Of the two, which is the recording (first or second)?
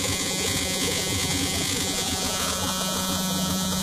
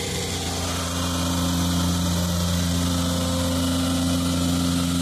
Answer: second